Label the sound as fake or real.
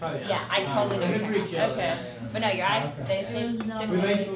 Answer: real